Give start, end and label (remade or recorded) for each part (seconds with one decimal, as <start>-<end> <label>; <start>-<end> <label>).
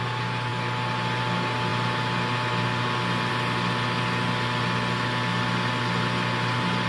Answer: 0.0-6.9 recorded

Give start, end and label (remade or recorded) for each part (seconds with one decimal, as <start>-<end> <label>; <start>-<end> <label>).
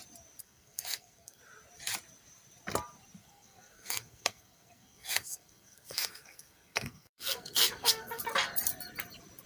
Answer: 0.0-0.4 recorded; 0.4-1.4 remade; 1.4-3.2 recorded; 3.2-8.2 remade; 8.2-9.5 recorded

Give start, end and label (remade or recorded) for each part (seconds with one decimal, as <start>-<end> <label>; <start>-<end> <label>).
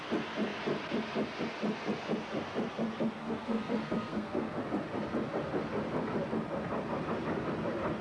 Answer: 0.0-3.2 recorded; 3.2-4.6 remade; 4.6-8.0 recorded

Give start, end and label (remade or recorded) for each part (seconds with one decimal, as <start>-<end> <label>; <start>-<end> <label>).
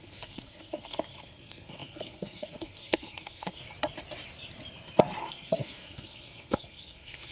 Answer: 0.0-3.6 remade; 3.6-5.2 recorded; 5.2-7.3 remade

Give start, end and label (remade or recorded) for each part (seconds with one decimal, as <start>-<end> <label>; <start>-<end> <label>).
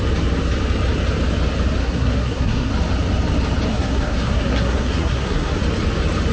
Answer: 0.0-1.8 recorded; 1.8-2.7 remade; 2.7-3.7 recorded; 3.7-5.6 remade; 5.6-6.3 recorded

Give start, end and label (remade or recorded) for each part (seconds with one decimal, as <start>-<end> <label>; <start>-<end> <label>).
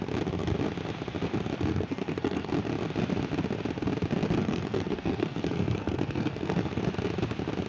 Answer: 0.0-1.7 recorded; 1.7-2.5 remade; 2.5-4.4 recorded; 4.4-6.8 remade; 6.8-7.7 recorded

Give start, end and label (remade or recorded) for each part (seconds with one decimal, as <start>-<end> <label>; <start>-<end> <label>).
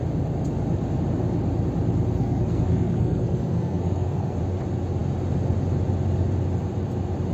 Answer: 0.0-2.2 recorded; 2.2-4.4 remade; 4.4-7.3 recorded